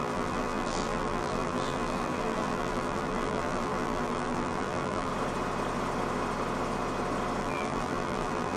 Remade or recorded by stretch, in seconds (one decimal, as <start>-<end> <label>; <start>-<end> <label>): 0.0-5.1 remade; 5.1-7.4 recorded; 7.4-8.6 remade